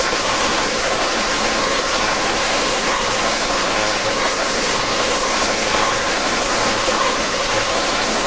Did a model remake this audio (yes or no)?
yes